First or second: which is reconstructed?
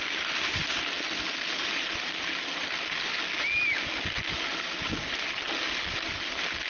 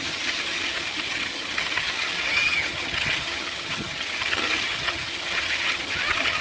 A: second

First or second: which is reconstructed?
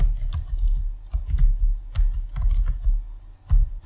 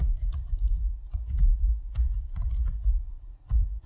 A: second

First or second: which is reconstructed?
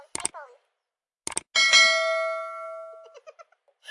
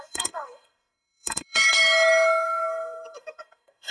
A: second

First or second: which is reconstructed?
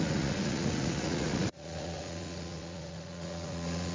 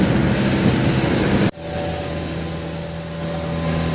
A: first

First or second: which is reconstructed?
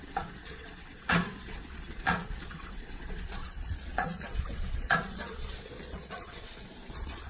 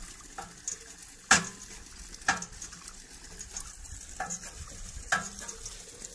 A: first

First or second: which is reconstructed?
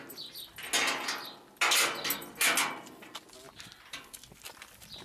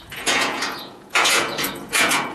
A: second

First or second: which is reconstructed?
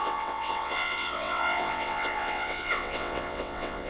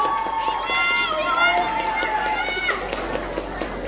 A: first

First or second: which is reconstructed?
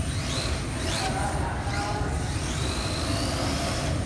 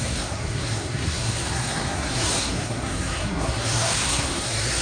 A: second